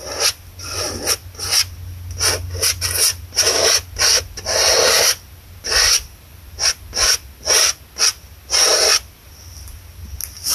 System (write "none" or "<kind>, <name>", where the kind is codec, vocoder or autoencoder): none